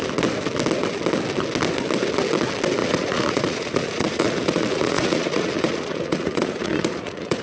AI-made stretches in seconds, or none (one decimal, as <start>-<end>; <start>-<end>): 2.8-7.4